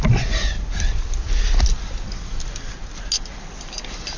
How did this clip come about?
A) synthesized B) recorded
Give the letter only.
B